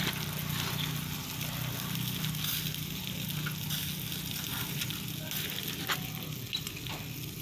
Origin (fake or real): real